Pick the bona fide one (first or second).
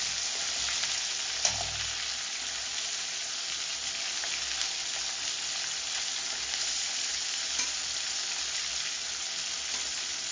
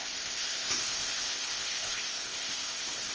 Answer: first